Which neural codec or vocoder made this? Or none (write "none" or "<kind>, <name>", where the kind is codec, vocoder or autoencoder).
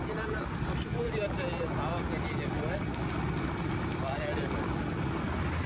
none